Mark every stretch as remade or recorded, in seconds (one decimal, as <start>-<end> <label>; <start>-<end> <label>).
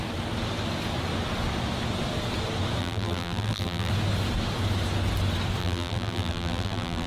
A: 0.0-2.8 recorded; 2.8-3.9 remade; 3.9-5.6 recorded; 5.6-7.1 remade